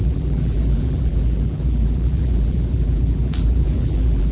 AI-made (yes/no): yes